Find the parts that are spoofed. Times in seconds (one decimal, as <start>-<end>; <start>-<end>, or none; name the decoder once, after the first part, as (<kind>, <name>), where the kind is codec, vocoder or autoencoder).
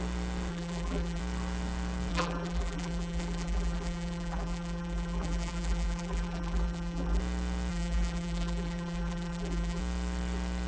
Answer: 0.5-1.2 (vocoder, BigVGAN v2); 2.1-7.2; 7.7-9.8